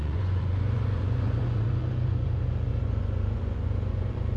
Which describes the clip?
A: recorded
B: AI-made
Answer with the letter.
B